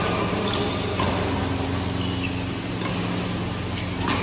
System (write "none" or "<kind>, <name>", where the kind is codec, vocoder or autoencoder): none